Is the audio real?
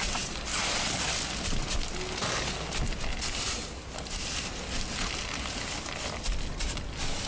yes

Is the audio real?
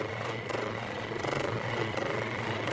no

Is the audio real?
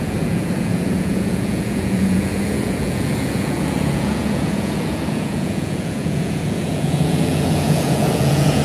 no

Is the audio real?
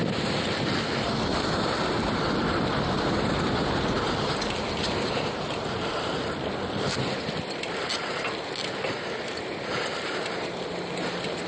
yes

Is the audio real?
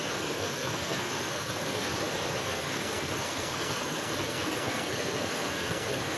no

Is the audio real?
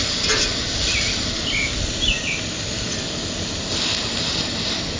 yes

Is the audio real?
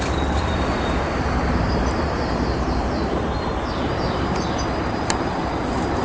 no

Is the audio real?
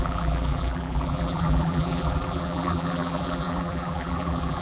no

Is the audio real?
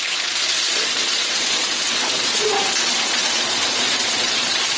no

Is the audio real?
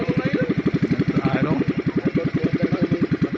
yes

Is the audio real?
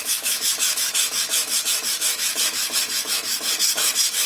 no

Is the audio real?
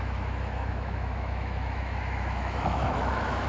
no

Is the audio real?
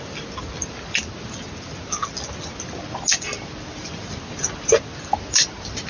yes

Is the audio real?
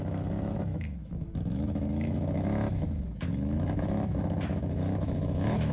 no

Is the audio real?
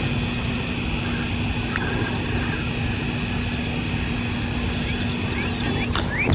yes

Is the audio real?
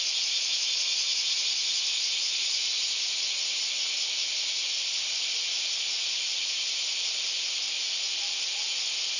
yes